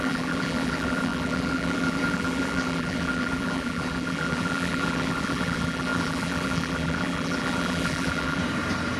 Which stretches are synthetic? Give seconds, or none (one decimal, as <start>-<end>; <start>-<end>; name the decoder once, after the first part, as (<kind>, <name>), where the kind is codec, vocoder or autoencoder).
0.0-8.4 (vocoder, BigVGAN v2)

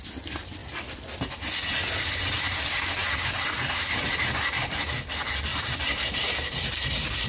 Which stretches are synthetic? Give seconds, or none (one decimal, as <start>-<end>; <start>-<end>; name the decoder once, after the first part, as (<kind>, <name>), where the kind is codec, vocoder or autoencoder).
0.6-1.1 (vocoder, BigVGAN v2); 3.0-4.8; 5.5-7.3

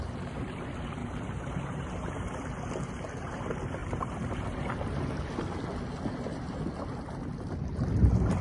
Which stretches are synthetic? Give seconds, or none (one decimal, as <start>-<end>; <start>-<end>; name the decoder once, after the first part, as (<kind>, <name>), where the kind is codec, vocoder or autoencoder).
1.0-2.3 (vocoder, BigVGAN v2); 3.8-5.2